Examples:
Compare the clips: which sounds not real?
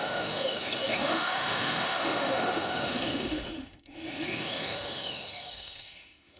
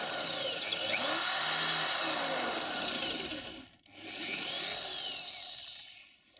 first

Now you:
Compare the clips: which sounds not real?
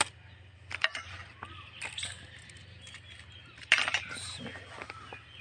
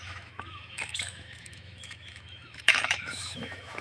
second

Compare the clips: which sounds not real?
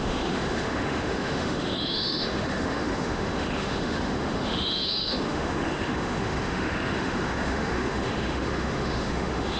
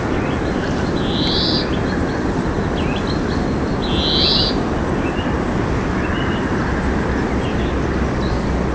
first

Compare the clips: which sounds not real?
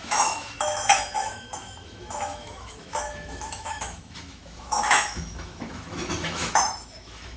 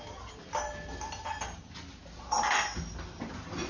first